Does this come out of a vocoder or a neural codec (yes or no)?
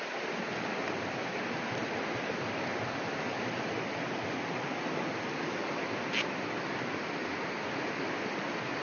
no